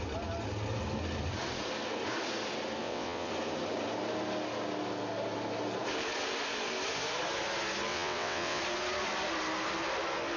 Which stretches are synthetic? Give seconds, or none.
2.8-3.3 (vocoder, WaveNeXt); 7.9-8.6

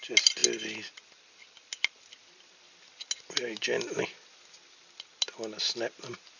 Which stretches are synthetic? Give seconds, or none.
none

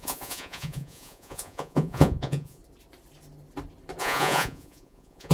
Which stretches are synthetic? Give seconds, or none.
0.0-2.6 (vocoder, Vocos); 4.0-5.3

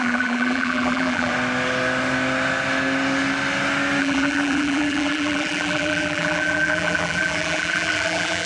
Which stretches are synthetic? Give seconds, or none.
0.0-1.3 (vocoder, BigVGAN v2); 4.0-8.5

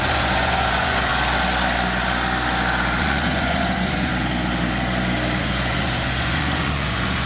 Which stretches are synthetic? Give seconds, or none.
0.0-1.1 (vocoder, Vocos); 3.0-4.1; 5.4-7.3

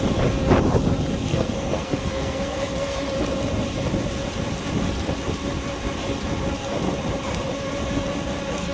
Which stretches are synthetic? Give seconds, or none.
1.3-3.0 (codec, SNAC)

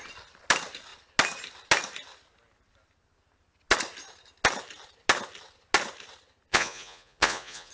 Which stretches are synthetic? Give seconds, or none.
6.5-7.7 (vocoder, Vocos)

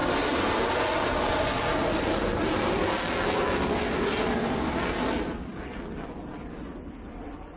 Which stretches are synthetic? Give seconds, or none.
none